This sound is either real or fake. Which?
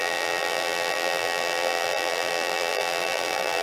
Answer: fake